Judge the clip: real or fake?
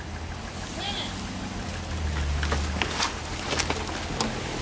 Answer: real